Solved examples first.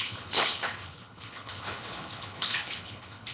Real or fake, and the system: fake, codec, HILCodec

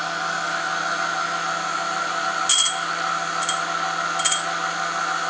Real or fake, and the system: real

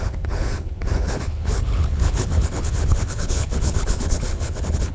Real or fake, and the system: fake, codec, HILCodec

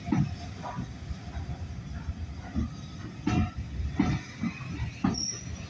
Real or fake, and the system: real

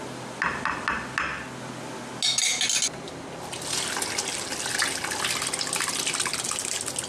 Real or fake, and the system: real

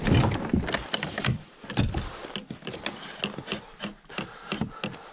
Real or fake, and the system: real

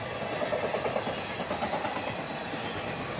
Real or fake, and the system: real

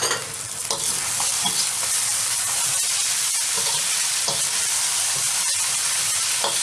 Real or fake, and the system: real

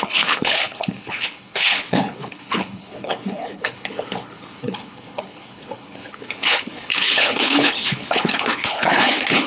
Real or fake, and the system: fake, codec, HILCodec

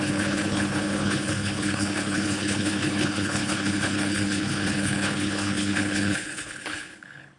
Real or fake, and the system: fake, codec, HILCodec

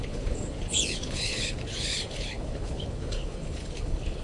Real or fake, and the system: fake, codec, HILCodec